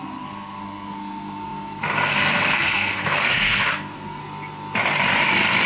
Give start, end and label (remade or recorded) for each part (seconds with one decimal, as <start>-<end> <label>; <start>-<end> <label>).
0.0-4.2 remade; 4.2-5.7 recorded